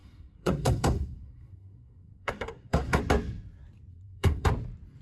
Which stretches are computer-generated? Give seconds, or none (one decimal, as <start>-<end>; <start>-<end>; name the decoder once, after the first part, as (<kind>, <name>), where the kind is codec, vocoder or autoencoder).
0.0-3.0 (codec, SNAC); 3.9-4.5